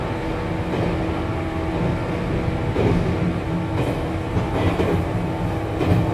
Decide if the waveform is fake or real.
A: real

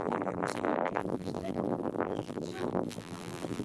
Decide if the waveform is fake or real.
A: fake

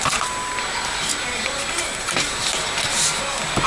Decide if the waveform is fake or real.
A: real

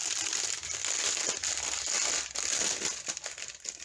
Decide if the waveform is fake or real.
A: real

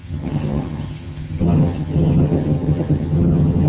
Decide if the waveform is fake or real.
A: fake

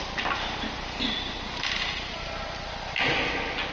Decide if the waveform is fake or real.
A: real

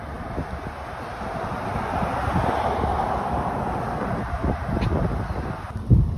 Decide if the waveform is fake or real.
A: real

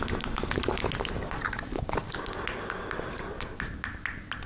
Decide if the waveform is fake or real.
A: real